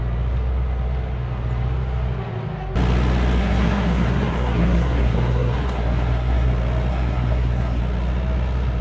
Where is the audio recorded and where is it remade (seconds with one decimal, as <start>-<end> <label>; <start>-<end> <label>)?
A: 0.0-3.4 recorded; 3.4-6.5 remade; 6.5-6.9 recorded; 6.9-7.8 remade; 7.8-8.8 recorded